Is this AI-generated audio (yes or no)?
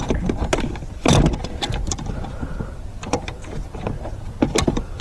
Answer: yes